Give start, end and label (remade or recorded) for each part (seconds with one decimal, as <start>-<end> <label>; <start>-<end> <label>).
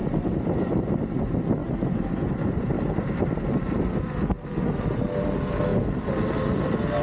0.0-1.2 remade; 1.2-1.6 recorded; 1.6-4.0 remade; 4.0-7.0 recorded